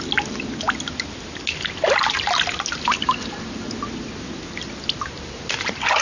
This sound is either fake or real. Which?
real